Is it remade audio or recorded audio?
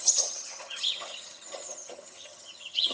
remade